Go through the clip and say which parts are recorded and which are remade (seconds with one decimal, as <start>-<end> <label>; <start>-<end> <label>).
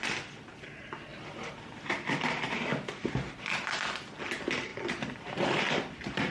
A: 0.0-1.1 recorded; 1.1-1.9 remade; 1.9-6.3 recorded